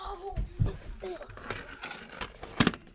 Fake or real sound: real